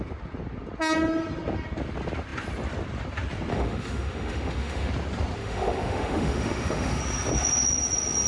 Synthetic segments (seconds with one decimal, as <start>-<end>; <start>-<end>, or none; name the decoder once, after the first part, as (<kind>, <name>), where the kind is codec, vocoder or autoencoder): 3.5-4.9 (autoencoder, DAC-VAE); 5.4-7.0